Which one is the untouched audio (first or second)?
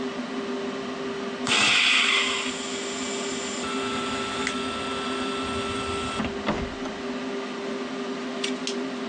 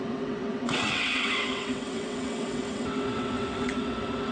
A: first